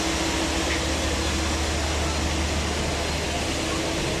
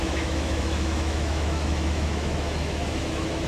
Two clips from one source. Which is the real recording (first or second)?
first